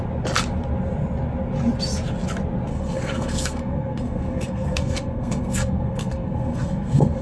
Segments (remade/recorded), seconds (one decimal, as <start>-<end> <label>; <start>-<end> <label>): 0.0-2.7 recorded; 2.7-7.2 remade